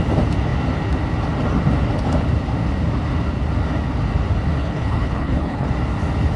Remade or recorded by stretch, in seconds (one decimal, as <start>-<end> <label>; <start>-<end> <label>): 0.0-4.6 recorded; 4.6-5.7 remade; 5.7-6.4 recorded